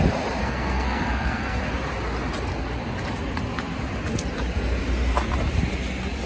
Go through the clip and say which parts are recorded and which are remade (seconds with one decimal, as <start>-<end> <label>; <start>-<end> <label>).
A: 0.0-0.4 recorded; 0.4-1.6 remade; 1.6-6.3 recorded